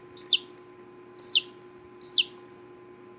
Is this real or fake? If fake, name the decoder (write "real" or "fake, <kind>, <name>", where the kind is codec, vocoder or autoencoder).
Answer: real